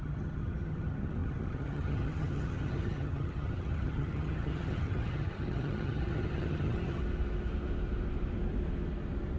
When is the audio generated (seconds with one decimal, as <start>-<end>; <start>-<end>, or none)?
0.0-7.0